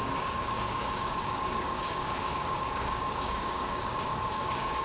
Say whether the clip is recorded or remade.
remade